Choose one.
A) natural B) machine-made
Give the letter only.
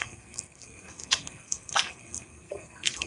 B